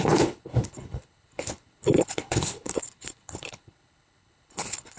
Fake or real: fake